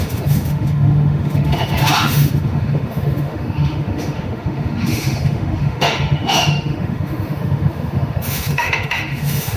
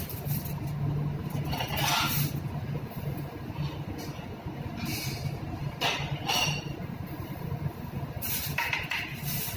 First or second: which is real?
second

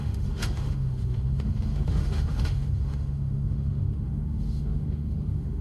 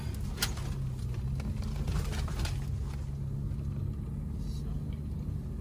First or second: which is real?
second